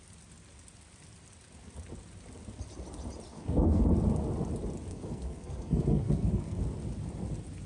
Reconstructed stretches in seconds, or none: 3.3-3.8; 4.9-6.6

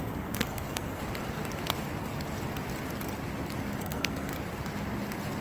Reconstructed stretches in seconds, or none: 0.0-1.0; 3.8-4.3

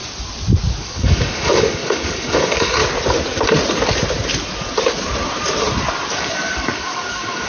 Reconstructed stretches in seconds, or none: 0.8-2.8; 6.1-7.5

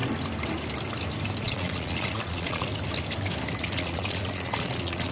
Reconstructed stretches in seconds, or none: 1.4-2.7; 3.6-5.1

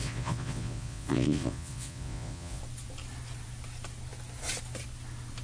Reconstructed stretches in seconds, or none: 0.0-2.6

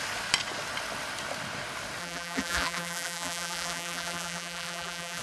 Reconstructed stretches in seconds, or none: 2.0-5.2

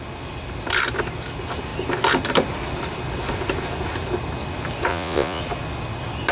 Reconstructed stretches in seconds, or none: 4.9-5.4